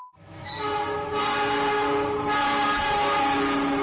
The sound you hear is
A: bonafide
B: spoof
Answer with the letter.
A